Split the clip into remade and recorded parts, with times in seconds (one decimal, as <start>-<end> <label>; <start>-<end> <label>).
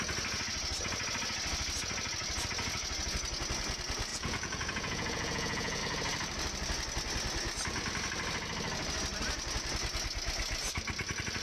0.0-4.1 recorded; 4.1-5.8 remade; 5.8-11.4 recorded